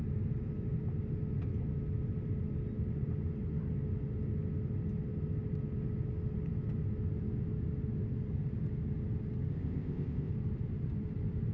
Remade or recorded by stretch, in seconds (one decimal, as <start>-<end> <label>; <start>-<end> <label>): 0.0-9.5 recorded; 9.5-10.3 remade; 10.3-11.5 recorded